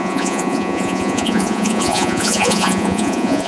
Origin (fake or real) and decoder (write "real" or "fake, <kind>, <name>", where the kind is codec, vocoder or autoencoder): fake, vocoder, Vocos